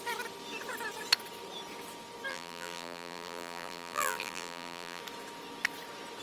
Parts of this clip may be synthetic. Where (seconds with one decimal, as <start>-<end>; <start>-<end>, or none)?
2.3-5.0